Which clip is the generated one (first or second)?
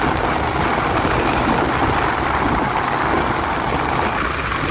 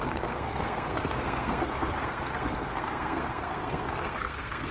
second